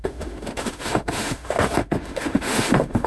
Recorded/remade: remade